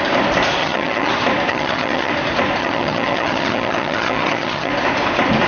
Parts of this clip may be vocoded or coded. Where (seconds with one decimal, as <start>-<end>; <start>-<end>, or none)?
0.6-1.1; 1.5-2.1; 2.6-4.7